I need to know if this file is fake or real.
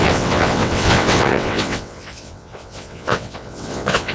fake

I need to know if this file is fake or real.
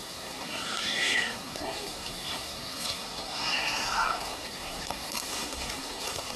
fake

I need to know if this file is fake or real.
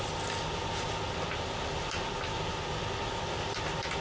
real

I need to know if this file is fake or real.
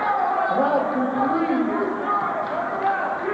real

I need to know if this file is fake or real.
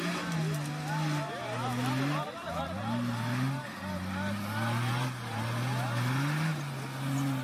real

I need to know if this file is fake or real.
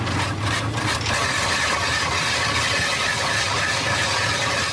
real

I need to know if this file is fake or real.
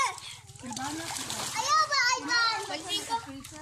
real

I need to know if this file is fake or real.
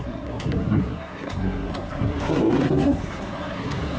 fake